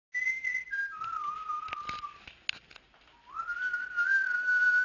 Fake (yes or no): no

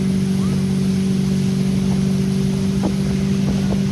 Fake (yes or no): no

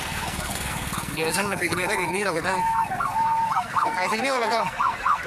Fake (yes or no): yes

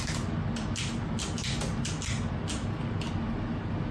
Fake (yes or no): no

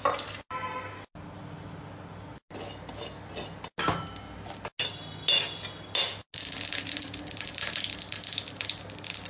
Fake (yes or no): no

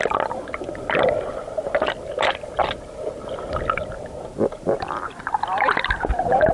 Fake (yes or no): no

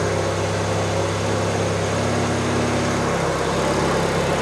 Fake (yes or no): no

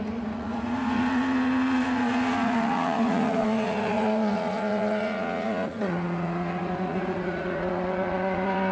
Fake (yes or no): yes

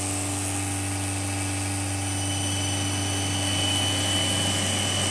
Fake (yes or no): no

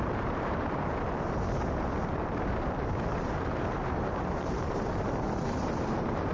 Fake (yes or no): yes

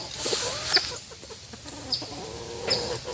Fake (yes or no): no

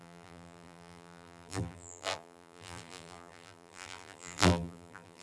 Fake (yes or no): yes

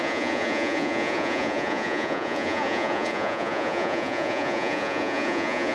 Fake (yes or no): yes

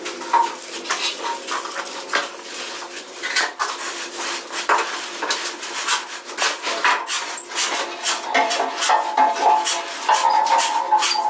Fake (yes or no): no